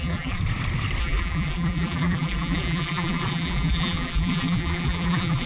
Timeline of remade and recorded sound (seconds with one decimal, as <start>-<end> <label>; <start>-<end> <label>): 0.0-0.4 remade; 0.4-1.0 recorded; 1.0-5.5 remade